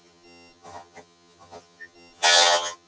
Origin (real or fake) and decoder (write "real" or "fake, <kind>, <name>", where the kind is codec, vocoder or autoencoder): fake, vocoder, HiFi-GAN